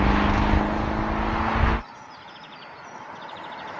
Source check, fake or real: real